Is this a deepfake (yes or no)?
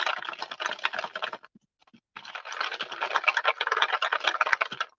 no